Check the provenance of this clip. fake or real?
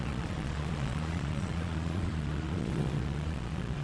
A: fake